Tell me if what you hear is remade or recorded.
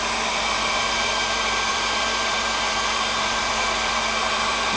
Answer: remade